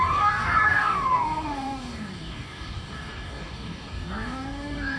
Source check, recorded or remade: remade